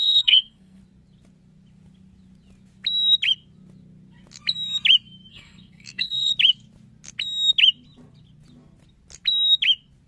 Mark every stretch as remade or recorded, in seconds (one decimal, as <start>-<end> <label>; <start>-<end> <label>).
0.0-0.8 remade; 0.8-5.3 recorded; 5.3-6.3 remade; 6.3-10.1 recorded